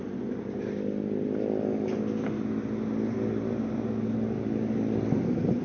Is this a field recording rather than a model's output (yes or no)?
yes